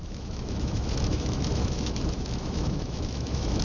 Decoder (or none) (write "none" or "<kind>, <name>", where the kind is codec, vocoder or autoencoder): autoencoder, DAC-VAE